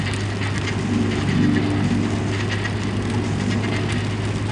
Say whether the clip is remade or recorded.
recorded